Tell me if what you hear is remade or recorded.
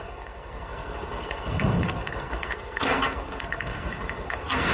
remade